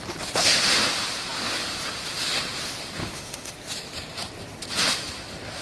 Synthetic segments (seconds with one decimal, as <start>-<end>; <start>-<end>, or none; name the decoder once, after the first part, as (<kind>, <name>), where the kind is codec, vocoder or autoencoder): 3.0-3.5 (autoencoder, DAC-VAE)